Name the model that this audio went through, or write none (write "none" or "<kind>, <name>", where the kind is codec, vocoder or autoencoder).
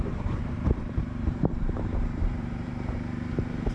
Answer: vocoder, BigVGAN v2